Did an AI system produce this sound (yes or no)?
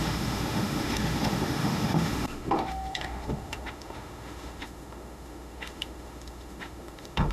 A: yes